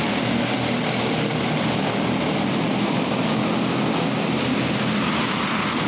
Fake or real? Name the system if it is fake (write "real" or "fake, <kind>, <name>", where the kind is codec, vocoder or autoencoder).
real